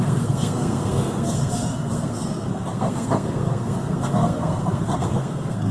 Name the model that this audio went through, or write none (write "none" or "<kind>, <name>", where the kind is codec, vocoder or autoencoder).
codec, SNAC